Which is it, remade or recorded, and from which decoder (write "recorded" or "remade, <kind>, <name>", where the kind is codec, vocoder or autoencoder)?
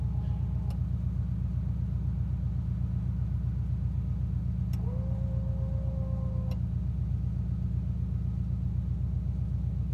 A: recorded